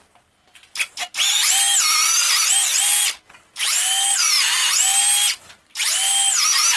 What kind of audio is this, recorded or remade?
recorded